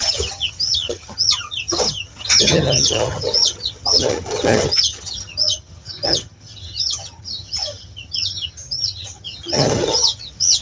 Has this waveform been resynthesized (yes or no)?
yes